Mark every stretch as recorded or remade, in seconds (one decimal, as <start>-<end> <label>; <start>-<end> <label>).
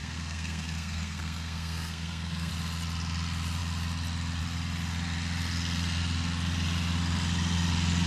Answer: 0.0-2.5 remade; 2.5-8.1 recorded